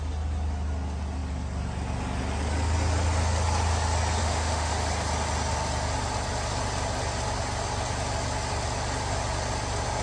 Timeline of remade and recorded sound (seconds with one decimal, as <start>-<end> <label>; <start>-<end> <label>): 0.0-4.2 recorded; 4.2-4.7 remade; 4.7-10.0 recorded